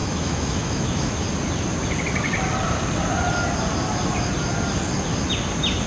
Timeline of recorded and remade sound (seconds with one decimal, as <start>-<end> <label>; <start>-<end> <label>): 0.0-1.1 remade; 1.1-5.9 recorded